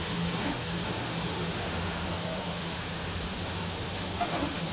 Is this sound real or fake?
fake